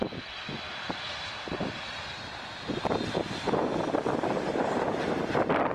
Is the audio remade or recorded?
remade